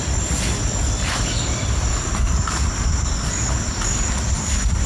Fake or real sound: fake